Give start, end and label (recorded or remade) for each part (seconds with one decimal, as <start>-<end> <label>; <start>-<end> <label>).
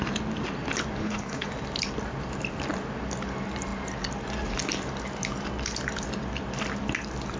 0.0-1.0 recorded; 1.0-1.5 remade; 1.5-7.4 recorded